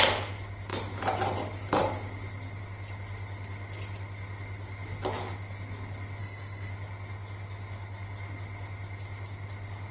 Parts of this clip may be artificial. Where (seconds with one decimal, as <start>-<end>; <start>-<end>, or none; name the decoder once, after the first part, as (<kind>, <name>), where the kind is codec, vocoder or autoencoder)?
6.2-6.7 (codec, DAC)